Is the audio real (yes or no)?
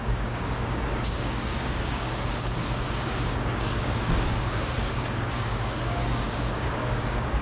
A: no